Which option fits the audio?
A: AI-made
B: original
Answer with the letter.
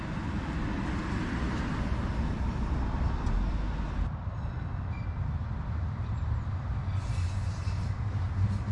B